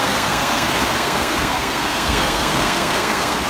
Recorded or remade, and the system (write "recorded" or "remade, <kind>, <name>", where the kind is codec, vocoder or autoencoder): remade, codec, SNAC